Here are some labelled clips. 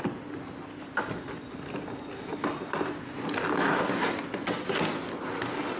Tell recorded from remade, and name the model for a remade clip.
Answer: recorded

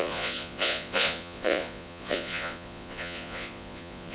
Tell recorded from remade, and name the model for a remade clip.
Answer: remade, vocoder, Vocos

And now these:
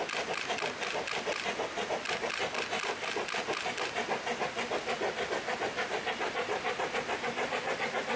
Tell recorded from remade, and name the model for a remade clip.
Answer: recorded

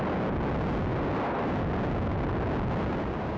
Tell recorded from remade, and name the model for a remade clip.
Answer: recorded